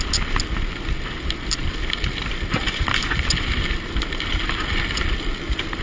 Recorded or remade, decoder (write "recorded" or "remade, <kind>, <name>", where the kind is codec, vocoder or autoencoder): recorded